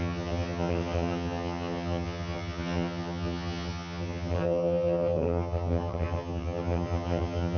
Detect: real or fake fake